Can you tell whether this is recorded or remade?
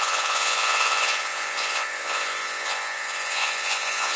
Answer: remade